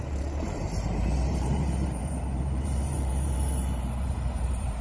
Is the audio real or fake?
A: fake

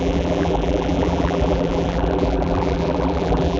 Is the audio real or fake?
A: fake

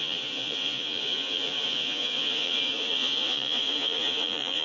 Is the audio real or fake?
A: fake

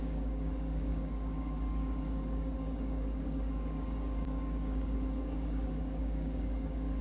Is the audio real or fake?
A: fake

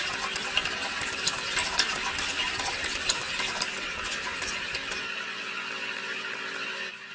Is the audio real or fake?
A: real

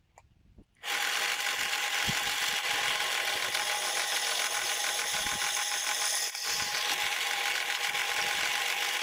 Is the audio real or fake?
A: real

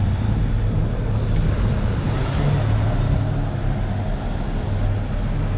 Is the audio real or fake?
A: real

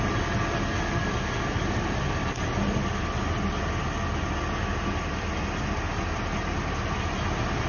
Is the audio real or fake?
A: real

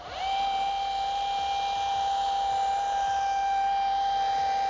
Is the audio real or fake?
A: real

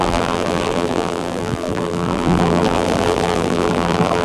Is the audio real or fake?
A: fake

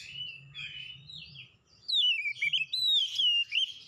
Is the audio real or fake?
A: real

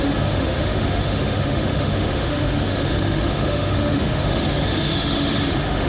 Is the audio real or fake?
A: fake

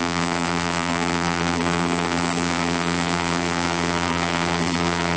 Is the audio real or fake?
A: fake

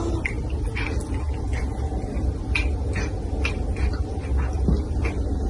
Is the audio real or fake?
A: real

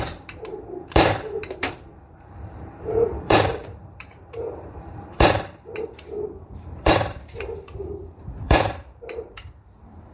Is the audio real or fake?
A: fake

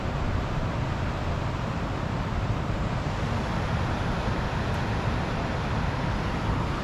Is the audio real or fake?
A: real